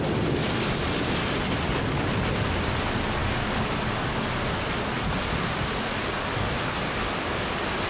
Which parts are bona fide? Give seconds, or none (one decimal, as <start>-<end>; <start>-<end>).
0.0-7.9